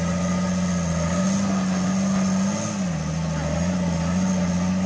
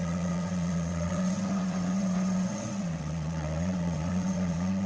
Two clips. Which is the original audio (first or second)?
first